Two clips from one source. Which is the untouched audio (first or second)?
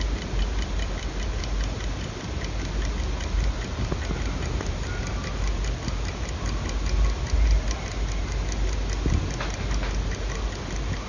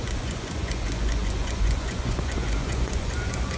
first